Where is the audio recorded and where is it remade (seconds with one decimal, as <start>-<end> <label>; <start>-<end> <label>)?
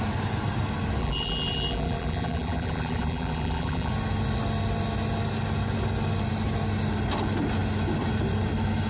0.0-1.0 recorded; 1.0-3.9 remade; 3.9-8.9 recorded